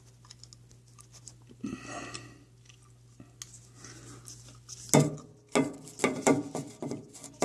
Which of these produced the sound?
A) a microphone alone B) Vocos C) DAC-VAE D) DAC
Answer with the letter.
A